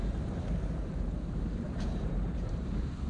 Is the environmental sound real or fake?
fake